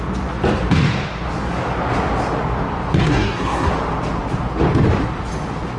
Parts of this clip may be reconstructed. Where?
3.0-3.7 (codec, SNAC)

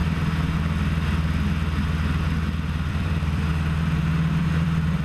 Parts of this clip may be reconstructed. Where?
2.9-3.5 (vocoder, BigVGAN v2); 4.4-5.0

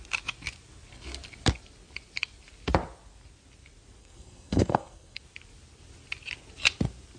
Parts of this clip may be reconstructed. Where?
4.0-5.2 (codec, SNAC)

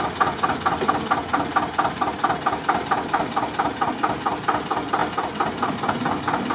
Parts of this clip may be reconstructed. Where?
none

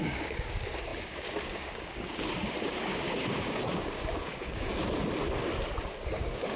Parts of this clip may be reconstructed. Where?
0.0-4.7 (codec, DAC); 6.0-6.6

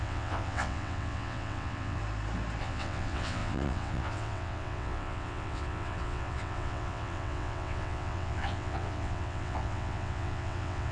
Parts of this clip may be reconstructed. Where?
0.0-2.0 (vocoder, WaveNeXt); 2.6-10.9

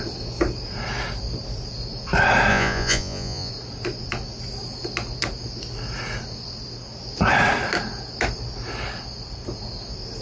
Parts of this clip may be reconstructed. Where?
2.5-3.5 (vocoder, Vocos)

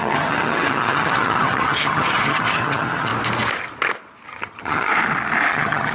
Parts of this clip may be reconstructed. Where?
0.0-3.1 (vocoder, HiFi-GAN); 4.3-4.9; 5.5-5.9